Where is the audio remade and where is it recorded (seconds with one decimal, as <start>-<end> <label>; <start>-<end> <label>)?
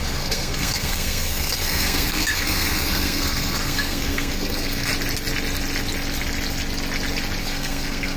0.0-4.9 remade; 4.9-7.4 recorded; 7.4-8.2 remade